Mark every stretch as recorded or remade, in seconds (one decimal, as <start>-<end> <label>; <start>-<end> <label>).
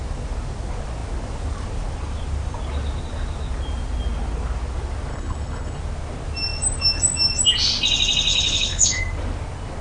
0.0-5.1 recorded; 5.1-5.8 remade; 5.8-8.3 recorded; 8.3-9.0 remade; 9.0-9.8 recorded